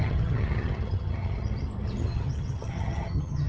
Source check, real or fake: fake